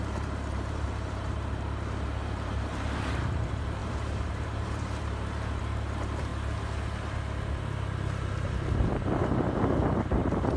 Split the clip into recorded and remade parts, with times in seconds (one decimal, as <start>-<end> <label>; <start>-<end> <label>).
0.0-6.3 remade; 6.3-9.6 recorded; 9.6-10.6 remade